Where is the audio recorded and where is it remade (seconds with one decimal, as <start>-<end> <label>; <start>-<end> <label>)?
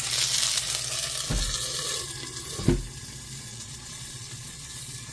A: 0.0-3.5 recorded; 3.5-5.1 remade